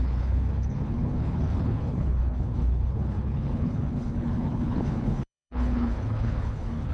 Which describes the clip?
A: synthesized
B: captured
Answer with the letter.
A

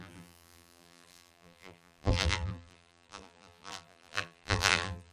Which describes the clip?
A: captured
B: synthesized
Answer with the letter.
B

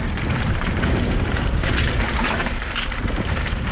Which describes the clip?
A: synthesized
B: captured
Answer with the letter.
A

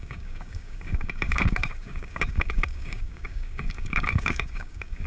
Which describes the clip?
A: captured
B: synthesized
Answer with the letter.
B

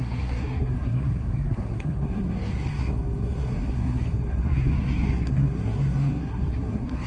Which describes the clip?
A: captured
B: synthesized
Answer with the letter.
B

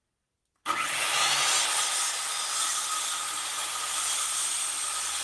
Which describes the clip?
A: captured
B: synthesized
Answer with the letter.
A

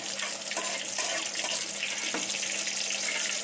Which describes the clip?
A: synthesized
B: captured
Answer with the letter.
B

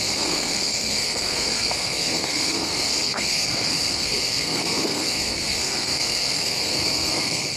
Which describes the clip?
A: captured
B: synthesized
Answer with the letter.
B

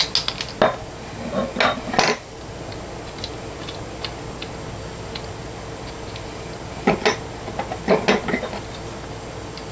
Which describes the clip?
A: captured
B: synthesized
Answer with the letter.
A